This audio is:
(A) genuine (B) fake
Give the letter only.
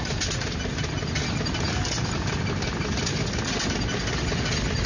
A